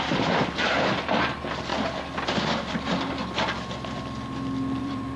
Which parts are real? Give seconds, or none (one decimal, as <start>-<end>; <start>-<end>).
1.7-4.8